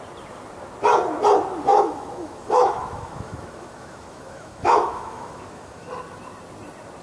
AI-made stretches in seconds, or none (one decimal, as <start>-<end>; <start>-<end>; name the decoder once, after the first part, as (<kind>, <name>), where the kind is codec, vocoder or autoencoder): 1.7-5.9 (autoencoder, DAC-VAE)